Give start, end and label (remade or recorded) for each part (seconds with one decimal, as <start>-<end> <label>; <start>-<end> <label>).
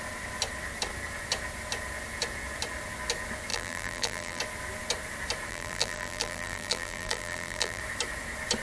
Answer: 0.0-3.5 recorded; 3.5-4.4 remade; 4.4-5.5 recorded; 5.5-7.8 remade; 7.8-8.6 recorded